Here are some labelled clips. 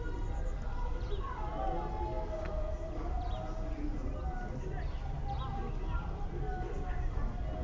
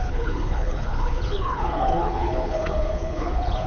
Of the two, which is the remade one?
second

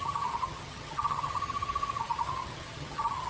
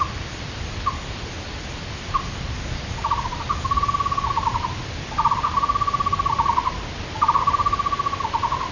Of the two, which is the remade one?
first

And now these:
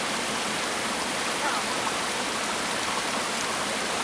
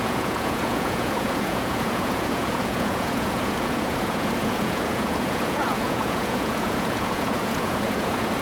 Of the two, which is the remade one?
second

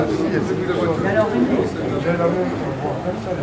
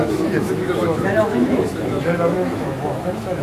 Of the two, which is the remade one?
second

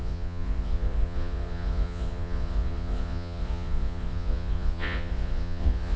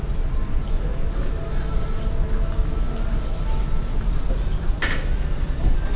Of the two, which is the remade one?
first